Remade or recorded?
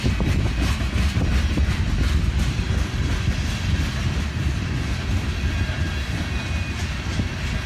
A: recorded